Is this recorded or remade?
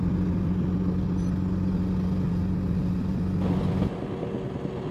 recorded